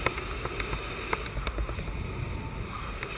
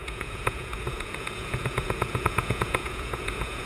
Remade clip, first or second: second